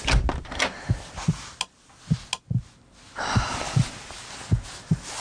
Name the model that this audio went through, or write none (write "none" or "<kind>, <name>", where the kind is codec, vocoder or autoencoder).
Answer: none